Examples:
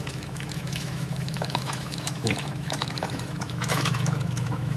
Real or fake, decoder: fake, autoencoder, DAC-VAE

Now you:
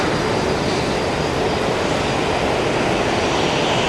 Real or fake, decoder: real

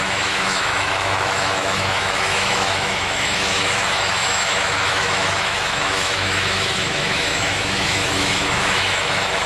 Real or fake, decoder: fake, autoencoder, DAC-VAE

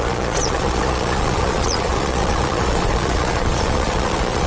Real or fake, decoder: fake, vocoder, Vocos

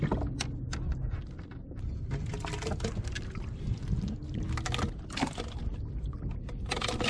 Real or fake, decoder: real